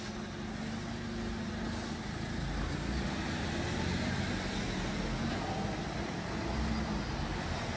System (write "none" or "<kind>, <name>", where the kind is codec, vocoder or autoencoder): none